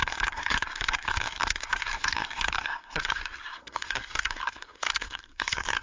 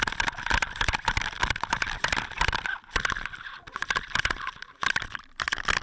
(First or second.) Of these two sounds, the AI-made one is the first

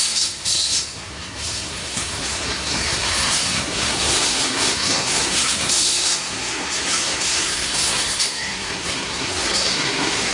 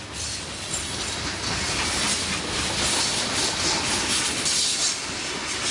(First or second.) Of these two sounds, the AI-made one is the first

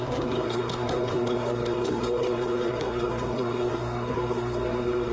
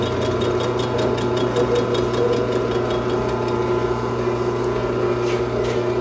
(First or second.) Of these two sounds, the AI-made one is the first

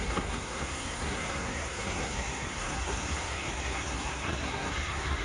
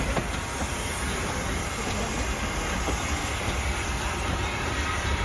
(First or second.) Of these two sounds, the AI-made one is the first